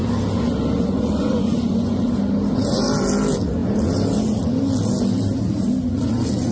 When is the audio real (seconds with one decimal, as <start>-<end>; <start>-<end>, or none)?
0.0-0.9; 2.1-6.5